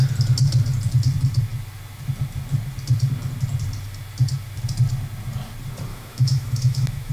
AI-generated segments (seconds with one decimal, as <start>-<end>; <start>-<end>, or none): 5.9-7.1